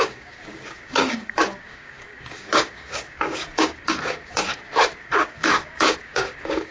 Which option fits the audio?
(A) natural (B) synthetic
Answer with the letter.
B